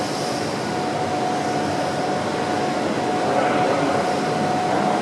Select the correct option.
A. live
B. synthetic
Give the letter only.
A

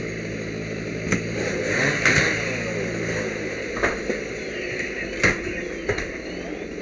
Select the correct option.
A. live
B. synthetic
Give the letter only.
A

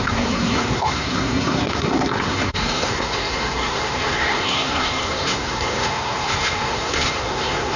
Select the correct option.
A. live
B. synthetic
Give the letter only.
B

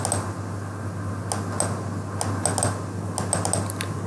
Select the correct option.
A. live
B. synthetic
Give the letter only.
A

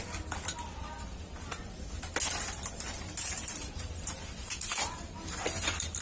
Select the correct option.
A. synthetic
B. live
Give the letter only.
B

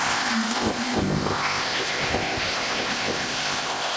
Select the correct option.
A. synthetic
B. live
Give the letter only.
A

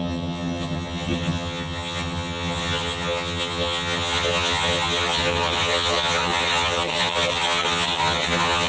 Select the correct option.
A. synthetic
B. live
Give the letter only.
A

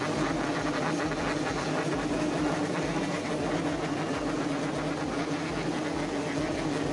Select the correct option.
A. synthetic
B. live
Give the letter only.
B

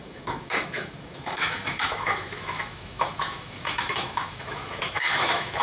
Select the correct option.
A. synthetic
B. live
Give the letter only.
A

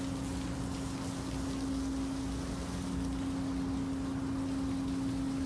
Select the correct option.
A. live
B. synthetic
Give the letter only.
A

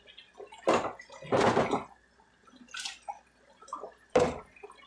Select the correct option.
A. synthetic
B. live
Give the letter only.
B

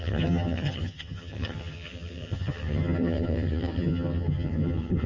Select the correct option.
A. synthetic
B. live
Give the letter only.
A